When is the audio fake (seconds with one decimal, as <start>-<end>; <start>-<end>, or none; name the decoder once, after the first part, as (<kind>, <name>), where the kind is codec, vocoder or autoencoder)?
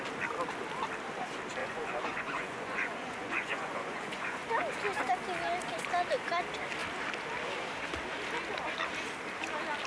1.6-4.5 (vocoder, Vocos)